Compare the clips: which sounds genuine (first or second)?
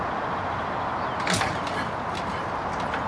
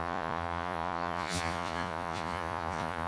first